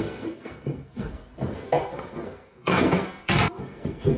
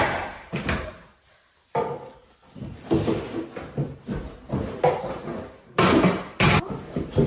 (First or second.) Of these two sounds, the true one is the second